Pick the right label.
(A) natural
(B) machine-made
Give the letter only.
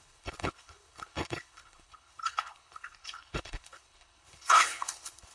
B